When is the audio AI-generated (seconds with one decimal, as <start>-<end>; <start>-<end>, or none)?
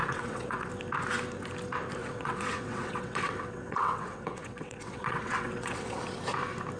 0.0-0.7; 2.0-6.0